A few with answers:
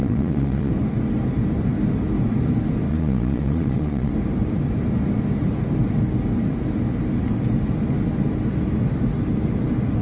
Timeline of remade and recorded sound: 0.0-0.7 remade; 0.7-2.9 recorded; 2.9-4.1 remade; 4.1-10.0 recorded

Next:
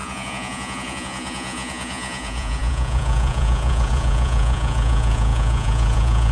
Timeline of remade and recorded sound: 0.0-6.3 remade

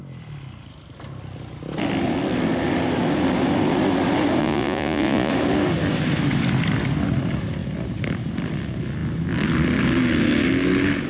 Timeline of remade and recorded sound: 0.0-4.4 recorded; 4.4-5.3 remade; 5.3-11.1 recorded

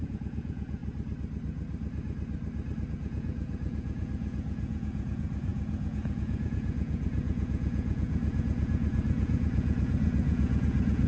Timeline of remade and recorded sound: 0.0-0.8 remade; 0.8-2.9 recorded; 2.9-11.1 remade